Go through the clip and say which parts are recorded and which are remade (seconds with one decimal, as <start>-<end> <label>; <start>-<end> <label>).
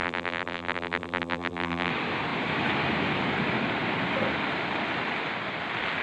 0.0-1.9 remade; 1.9-6.0 recorded